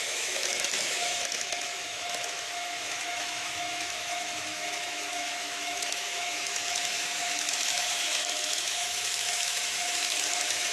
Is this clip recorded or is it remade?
remade